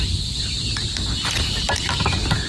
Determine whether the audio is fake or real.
fake